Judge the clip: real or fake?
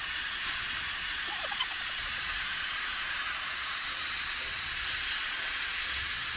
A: fake